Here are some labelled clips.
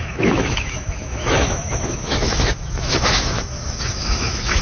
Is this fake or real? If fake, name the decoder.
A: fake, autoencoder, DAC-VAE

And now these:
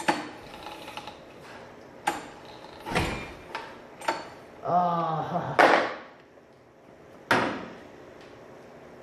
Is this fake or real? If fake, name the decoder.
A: real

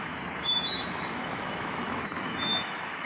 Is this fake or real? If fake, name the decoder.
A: fake, autoencoder, DAC-VAE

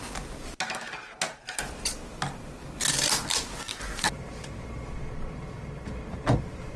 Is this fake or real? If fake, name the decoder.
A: real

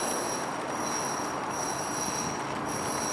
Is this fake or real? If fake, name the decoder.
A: real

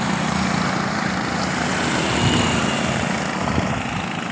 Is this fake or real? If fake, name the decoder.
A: real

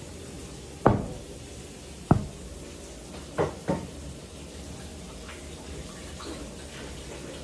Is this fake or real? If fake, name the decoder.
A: real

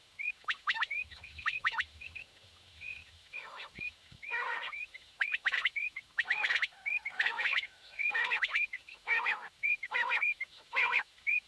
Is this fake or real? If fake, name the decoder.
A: fake, autoencoder, DAC-VAE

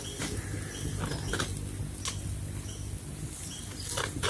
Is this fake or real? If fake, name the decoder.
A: real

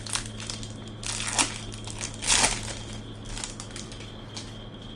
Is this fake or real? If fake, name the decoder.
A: real